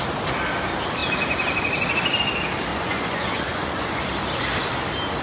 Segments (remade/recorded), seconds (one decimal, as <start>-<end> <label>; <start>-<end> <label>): 0.0-2.7 recorded; 2.7-4.1 remade; 4.1-5.2 recorded